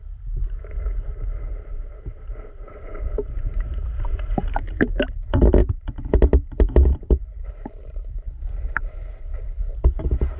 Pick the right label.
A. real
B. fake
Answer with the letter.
B